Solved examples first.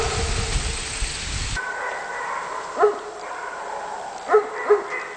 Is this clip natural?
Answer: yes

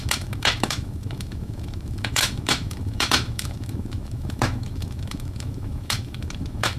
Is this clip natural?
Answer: no